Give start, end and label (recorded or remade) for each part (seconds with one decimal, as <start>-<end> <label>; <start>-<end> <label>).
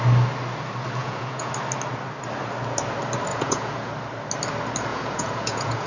0.0-1.0 recorded; 1.0-1.5 remade; 1.5-3.3 recorded; 3.3-3.9 remade; 3.9-4.9 recorded; 4.9-5.9 remade